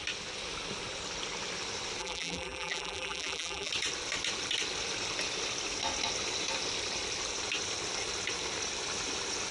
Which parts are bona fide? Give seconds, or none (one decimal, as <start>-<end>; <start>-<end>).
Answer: 0.0-2.0; 3.7-9.5